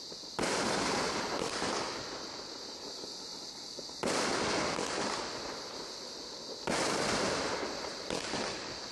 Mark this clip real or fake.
real